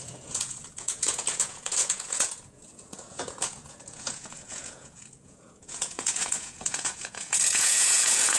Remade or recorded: remade